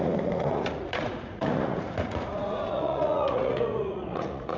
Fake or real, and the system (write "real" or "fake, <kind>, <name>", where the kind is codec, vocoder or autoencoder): fake, vocoder, Vocos